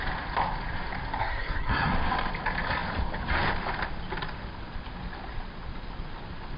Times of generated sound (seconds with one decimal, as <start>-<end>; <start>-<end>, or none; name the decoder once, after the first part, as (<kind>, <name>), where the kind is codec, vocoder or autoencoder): 1.2-1.9 (codec, SNAC)

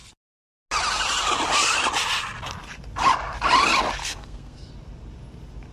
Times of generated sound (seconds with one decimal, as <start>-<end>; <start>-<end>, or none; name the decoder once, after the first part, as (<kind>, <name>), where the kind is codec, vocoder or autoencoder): 4.0-4.7 (codec, SNAC)

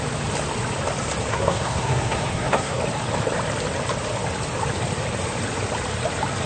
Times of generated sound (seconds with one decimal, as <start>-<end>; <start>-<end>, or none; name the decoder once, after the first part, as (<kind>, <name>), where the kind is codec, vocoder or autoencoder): 1.3-2.8 (codec, SNAC)